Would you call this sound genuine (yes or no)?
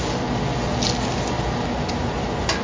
yes